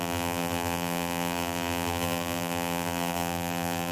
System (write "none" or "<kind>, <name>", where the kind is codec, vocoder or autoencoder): vocoder, BigVGAN v2